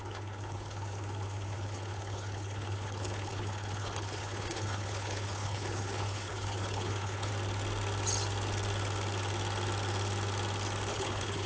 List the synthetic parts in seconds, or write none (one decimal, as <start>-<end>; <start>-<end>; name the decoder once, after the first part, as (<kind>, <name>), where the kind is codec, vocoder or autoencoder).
0.0-7.3 (codec, HILCodec); 10.9-11.5